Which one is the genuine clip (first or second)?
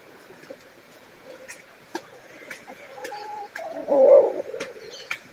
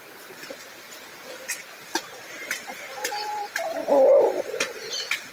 second